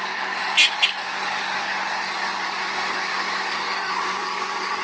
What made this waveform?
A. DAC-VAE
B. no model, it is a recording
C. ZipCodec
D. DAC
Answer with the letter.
D